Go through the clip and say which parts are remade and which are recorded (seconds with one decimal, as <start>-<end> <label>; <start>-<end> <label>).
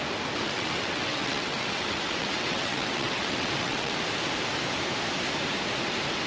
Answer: 0.0-0.4 recorded; 0.4-4.0 remade; 4.0-6.3 recorded